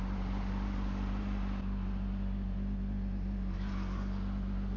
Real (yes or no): yes